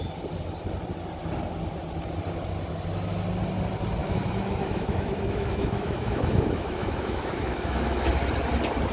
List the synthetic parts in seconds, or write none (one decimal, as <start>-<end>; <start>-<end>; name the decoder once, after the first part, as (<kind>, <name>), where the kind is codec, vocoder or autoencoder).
4.0-8.1 (autoencoder, DAC-VAE)